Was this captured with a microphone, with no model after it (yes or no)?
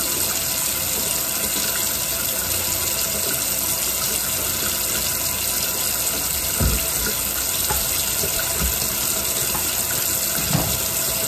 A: yes